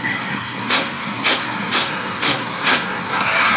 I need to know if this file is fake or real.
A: fake